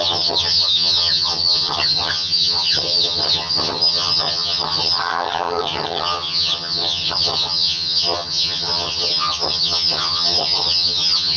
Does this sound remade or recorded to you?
remade